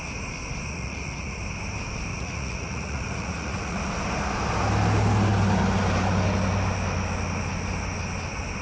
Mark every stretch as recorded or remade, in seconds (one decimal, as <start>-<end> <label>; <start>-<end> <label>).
0.0-0.7 recorded; 0.7-1.4 remade; 1.4-2.1 recorded; 2.1-3.8 remade; 3.8-8.6 recorded